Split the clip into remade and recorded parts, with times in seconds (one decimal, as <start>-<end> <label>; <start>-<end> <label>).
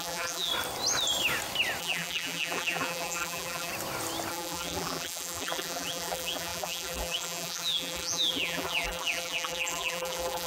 0.0-0.5 remade; 0.5-1.8 recorded; 1.8-3.7 remade; 3.7-4.3 recorded; 4.3-10.5 remade